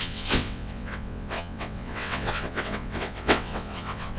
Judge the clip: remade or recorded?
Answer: remade